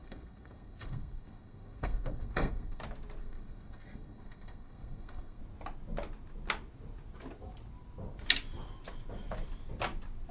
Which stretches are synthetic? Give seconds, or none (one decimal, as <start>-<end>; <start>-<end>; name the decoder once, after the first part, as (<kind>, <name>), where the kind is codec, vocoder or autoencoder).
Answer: 0.0-2.8 (codec, SNAC); 3.2-5.4